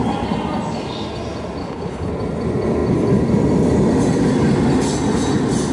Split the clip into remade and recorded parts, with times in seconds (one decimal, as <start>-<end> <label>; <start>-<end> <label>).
0.0-1.6 recorded; 1.6-2.1 remade; 2.1-5.7 recorded